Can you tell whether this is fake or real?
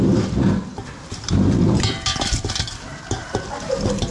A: real